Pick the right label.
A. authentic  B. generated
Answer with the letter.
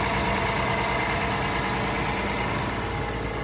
A